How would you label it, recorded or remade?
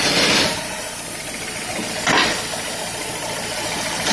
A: recorded